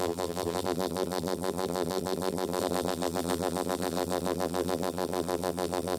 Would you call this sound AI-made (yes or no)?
yes